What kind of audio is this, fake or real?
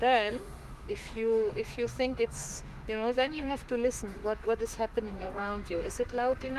fake